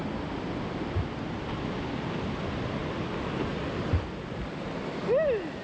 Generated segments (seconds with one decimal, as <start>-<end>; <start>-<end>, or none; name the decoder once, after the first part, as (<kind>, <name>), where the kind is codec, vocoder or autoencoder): none